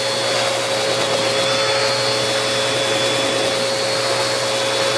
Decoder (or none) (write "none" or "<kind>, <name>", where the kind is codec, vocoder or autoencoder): none